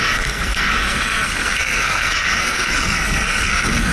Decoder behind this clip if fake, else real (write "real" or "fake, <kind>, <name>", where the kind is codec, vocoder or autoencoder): fake, codec, SNAC